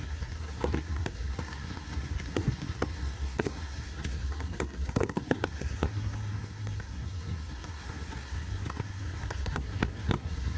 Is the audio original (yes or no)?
no